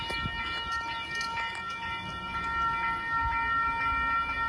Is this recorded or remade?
recorded